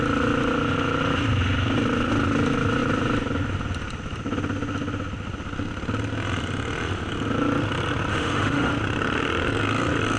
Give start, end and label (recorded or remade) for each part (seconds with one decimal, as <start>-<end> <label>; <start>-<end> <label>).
0.0-8.1 recorded; 8.1-8.7 remade; 8.7-10.2 recorded